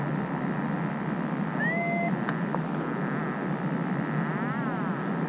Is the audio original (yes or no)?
yes